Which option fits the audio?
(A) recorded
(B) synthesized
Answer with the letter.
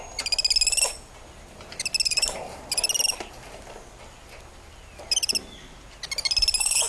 A